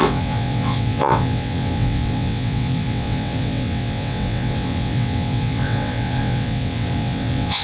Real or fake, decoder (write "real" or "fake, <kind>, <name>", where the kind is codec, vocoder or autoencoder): fake, vocoder, WaveNeXt